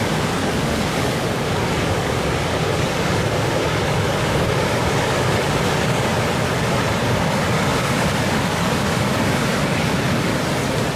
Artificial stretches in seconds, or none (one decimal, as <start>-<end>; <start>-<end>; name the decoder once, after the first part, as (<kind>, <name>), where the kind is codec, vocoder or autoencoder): 0.0-6.1 (codec, DAC); 7.0-10.3